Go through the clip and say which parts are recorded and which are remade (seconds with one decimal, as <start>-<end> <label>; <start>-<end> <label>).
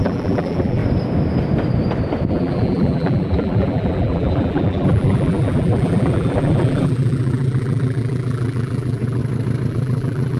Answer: 0.0-0.8 remade; 0.8-2.3 recorded; 2.3-9.2 remade; 9.2-9.7 recorded; 9.7-10.4 remade